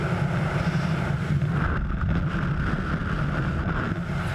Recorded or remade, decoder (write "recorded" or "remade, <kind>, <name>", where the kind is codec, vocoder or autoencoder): recorded